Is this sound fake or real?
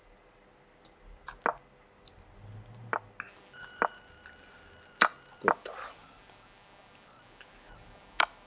real